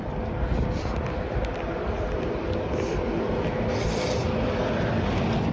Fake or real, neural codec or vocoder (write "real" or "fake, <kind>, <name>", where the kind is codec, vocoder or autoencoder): real